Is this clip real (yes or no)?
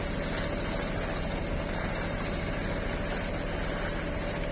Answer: yes